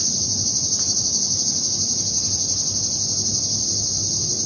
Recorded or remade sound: recorded